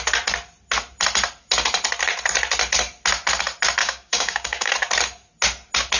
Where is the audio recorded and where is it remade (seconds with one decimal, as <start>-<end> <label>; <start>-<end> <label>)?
0.0-3.8 recorded; 3.8-4.7 remade; 4.7-6.0 recorded